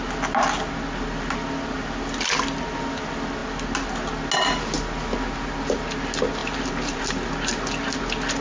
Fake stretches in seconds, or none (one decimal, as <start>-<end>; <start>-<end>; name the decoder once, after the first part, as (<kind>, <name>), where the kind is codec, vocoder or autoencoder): 6.4-7.0 (vocoder, BigVGAN v2)